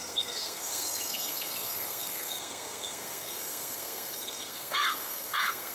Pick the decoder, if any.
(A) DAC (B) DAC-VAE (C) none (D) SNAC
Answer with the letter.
D